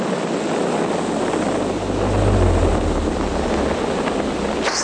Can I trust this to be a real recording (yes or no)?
yes